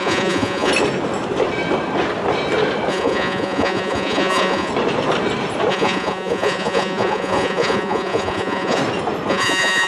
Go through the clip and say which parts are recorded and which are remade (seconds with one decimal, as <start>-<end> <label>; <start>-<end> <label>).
0.0-0.7 remade; 0.7-2.9 recorded; 2.9-4.7 remade; 4.7-5.7 recorded; 5.7-8.8 remade; 8.8-9.3 recorded; 9.3-9.9 remade